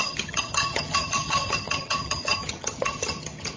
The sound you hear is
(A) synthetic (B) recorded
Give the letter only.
A